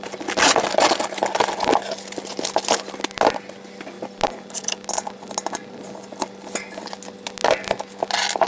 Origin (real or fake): real